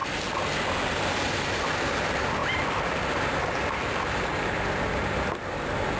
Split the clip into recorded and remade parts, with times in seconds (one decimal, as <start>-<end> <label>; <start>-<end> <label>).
0.0-6.0 recorded